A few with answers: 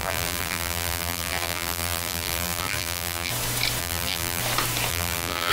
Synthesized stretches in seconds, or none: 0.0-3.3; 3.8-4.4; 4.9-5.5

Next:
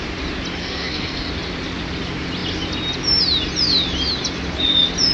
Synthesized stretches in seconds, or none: 0.6-1.3

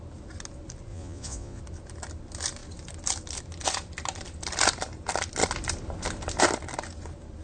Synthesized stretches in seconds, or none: 0.9-1.6

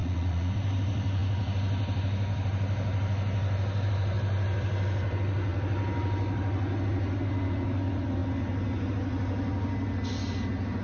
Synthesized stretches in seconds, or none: 0.0-0.5

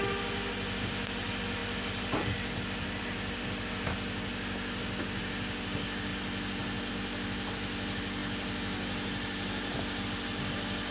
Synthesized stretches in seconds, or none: none

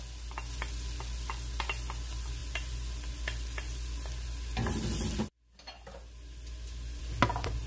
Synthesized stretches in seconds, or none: none

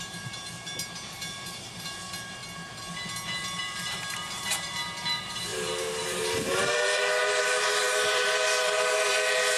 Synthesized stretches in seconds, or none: 0.0-2.4; 3.6-9.6

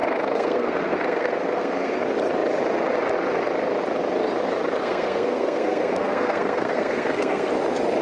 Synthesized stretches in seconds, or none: 0.0-2.0; 4.8-7.5